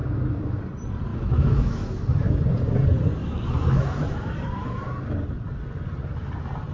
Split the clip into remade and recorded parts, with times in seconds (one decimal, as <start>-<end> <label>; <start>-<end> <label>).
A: 0.0-0.6 remade; 0.6-1.1 recorded; 1.1-2.4 remade; 2.4-3.2 recorded; 3.2-4.3 remade; 4.3-6.7 recorded